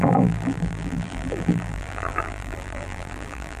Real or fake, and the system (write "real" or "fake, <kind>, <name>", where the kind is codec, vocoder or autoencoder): fake, vocoder, BigVGAN v2